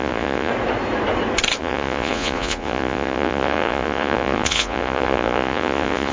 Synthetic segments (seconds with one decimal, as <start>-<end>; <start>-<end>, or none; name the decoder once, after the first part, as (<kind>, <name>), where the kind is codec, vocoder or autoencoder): 0.0-0.5 (vocoder, Vocos); 1.6-6.1